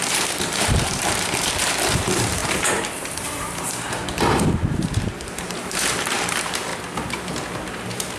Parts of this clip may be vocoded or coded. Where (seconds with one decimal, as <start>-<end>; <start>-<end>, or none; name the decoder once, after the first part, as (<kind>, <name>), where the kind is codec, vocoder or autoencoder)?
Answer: 0.0-6.7 (vocoder, BigVGAN v2)